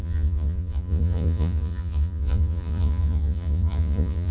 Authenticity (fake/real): fake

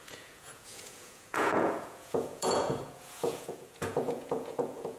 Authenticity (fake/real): fake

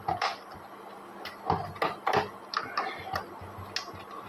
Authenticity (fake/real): real